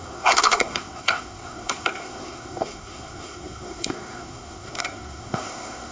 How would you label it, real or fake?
fake